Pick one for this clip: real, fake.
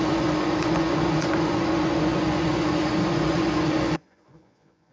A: fake